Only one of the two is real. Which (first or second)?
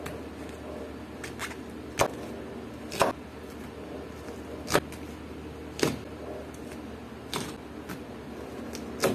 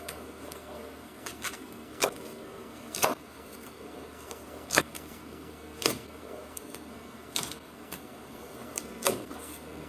first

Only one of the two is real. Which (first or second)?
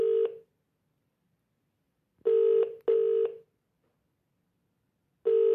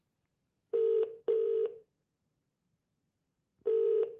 first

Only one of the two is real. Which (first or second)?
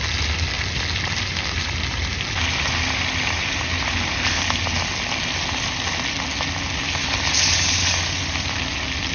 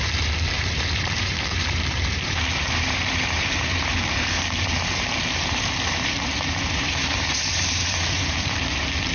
first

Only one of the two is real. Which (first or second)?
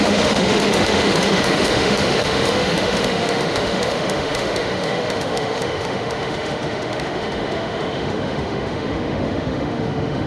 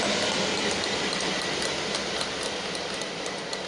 second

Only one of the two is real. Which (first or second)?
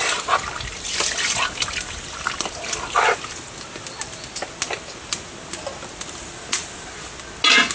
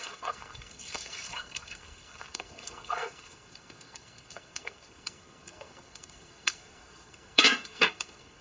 first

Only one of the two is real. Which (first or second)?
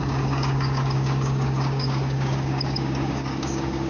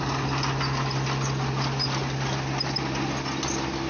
second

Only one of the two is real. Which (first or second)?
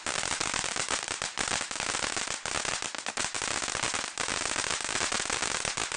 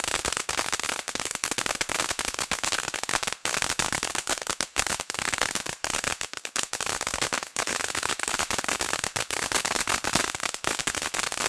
first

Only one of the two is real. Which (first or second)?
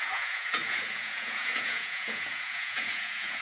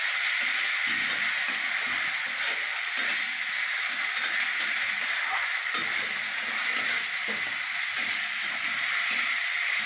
second